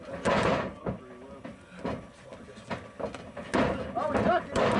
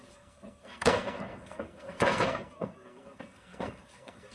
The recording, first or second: first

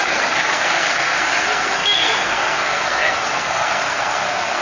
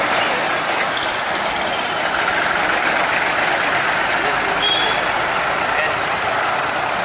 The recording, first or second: second